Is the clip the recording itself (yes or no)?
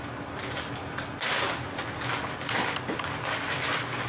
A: yes